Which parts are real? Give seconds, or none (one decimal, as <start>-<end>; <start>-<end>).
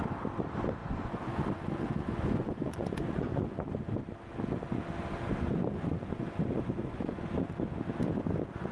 0.0-0.8; 3.7-5.7; 7.2-8.7